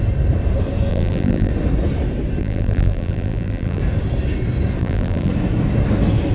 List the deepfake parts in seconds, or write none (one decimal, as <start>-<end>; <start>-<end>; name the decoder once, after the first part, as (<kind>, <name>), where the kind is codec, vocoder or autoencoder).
0.9-1.5 (vocoder, BigVGAN v2); 2.4-3.8; 4.8-5.3